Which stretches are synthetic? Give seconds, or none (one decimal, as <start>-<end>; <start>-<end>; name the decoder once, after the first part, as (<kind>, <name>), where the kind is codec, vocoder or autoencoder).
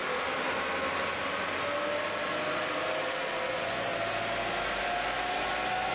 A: 3.5-3.9 (vocoder, Vocos)